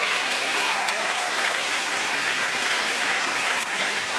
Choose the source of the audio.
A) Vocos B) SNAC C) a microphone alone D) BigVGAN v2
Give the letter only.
B